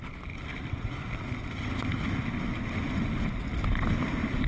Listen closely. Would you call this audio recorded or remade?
recorded